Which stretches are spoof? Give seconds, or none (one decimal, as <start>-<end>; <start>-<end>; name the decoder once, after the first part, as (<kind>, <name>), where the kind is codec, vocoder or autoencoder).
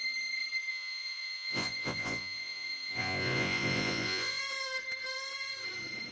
0.7-4.4 (vocoder, Vocos)